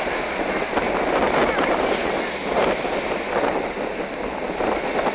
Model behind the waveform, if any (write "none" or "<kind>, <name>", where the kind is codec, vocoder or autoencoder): none